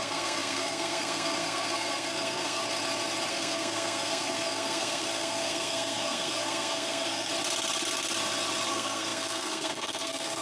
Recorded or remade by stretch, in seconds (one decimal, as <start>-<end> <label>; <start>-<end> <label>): 0.0-2.6 remade; 2.6-3.3 recorded; 3.3-7.3 remade; 7.3-8.7 recorded; 8.7-10.4 remade